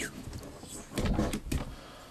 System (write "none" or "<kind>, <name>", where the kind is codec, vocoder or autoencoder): none